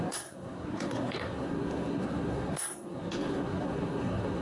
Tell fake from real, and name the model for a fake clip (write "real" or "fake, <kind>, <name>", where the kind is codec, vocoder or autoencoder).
fake, codec, SNAC